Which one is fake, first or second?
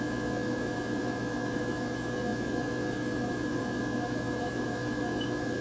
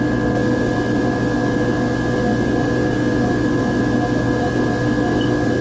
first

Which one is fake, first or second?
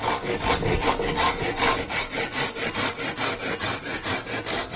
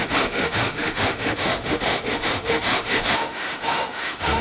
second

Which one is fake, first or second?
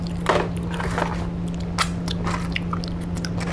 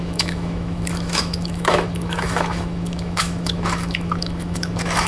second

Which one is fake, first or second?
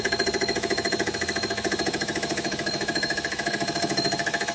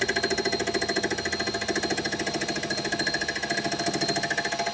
first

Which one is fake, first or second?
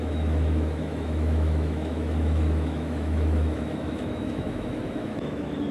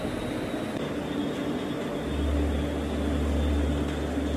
first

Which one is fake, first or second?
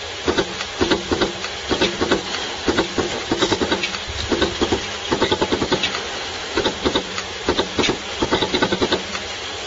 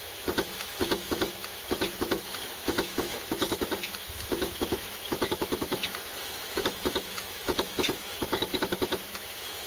second